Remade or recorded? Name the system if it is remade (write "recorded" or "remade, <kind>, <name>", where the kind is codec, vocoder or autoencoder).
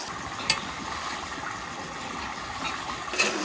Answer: recorded